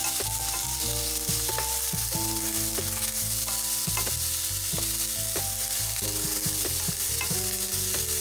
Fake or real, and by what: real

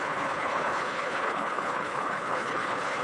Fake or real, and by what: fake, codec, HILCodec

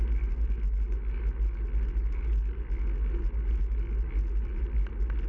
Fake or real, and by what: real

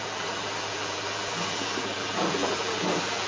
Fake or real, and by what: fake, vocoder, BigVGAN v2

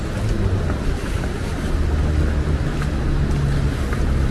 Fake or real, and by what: real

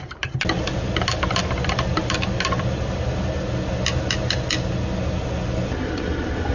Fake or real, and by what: real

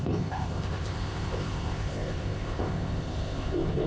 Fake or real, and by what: fake, codec, ZipCodec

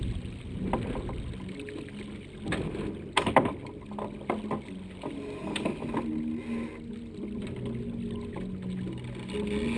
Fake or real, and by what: real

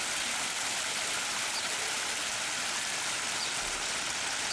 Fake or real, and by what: real